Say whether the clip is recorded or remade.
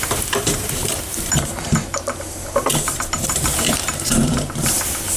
remade